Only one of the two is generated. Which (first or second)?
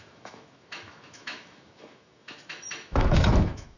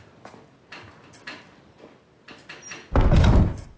first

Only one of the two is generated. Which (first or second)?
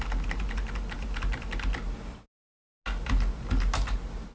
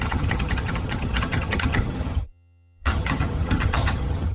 second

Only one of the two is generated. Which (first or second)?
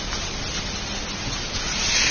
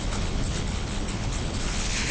second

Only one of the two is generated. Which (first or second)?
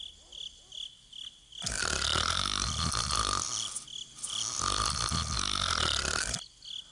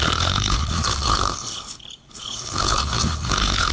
second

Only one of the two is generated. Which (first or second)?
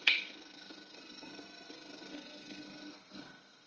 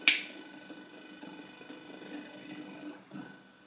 first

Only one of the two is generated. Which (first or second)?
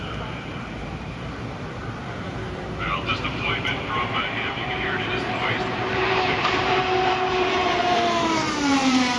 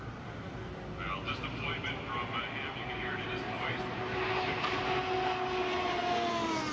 first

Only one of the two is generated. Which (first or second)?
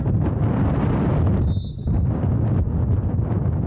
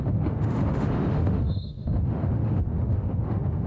second